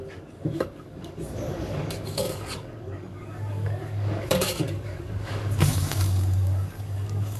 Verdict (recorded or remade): remade